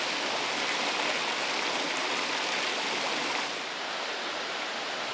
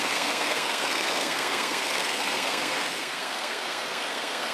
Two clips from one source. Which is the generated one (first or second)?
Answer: second